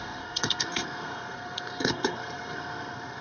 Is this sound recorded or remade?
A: remade